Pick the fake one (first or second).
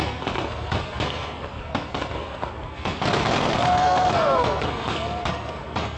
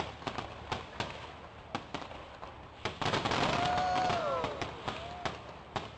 first